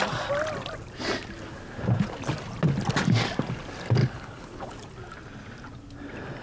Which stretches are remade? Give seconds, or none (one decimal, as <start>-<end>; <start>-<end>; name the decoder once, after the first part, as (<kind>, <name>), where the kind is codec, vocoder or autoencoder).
4.0-4.7 (codec, HILCodec)